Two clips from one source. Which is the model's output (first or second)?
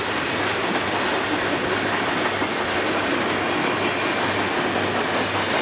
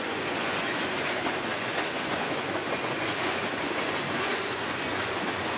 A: second